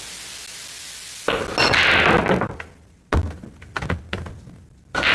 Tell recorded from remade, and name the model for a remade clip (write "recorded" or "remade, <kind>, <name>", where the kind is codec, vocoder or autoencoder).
recorded